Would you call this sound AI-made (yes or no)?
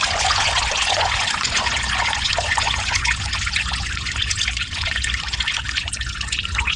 yes